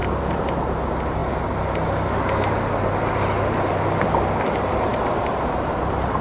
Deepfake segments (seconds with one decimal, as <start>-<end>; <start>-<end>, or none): 0.0-1.2; 4.7-6.2